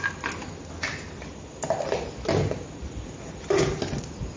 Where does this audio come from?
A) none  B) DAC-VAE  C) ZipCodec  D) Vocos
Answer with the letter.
A